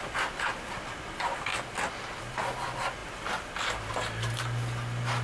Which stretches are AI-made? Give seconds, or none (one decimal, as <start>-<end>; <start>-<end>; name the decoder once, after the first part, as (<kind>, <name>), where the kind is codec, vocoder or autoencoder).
none